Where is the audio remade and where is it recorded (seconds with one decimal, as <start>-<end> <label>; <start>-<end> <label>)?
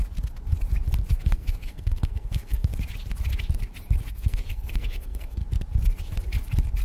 0.0-1.1 recorded; 1.1-2.7 remade; 2.7-4.1 recorded; 4.1-5.4 remade; 5.4-6.8 recorded